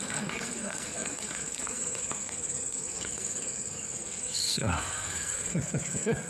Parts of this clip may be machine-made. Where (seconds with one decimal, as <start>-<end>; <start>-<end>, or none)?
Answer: 0.0-6.3